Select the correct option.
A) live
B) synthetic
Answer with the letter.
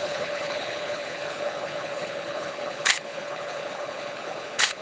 B